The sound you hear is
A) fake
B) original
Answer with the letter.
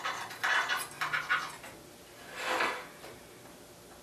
B